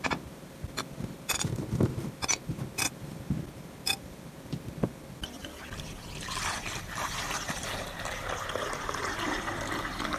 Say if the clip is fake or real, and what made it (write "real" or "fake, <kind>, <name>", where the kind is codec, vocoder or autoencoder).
real